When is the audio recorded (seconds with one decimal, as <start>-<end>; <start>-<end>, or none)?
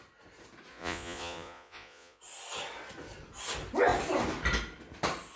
0.0-0.7; 2.2-5.4